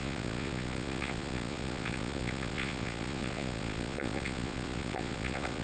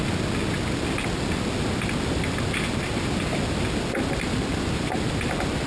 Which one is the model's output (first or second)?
first